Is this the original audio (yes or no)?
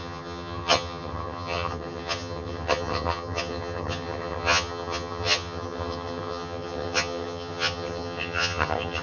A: no